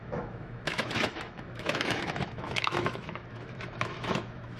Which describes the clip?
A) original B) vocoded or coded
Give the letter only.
B